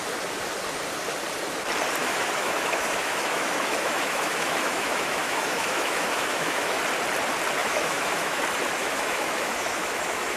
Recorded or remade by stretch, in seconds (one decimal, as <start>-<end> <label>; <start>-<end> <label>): 0.0-2.0 recorded; 2.0-6.8 remade; 6.8-7.6 recorded; 7.6-8.4 remade; 8.4-8.8 recorded; 8.8-10.4 remade

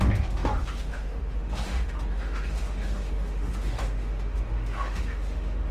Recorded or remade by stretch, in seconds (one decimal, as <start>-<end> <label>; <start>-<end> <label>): 0.0-5.7 remade